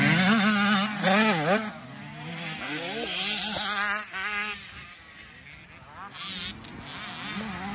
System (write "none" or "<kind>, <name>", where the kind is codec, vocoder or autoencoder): none